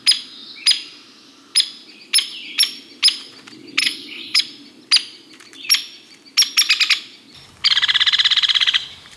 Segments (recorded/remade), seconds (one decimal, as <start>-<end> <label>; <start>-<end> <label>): 0.0-3.8 recorded; 3.8-4.4 remade; 4.4-9.2 recorded